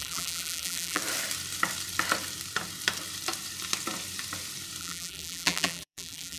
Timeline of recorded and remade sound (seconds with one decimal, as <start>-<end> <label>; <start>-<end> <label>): 0.0-1.0 remade; 1.0-4.8 recorded; 4.8-6.4 remade